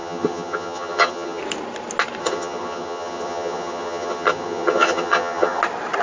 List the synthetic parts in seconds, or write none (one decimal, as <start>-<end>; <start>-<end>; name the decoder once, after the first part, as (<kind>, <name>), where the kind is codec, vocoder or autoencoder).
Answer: 0.0-1.4 (vocoder, HiFi-GAN); 2.2-5.6